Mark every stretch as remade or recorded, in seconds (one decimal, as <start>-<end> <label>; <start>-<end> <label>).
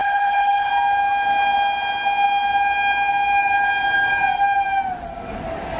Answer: 0.0-0.7 remade; 0.7-5.8 recorded